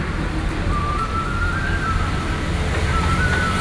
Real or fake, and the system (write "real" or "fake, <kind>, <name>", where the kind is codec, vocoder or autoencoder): real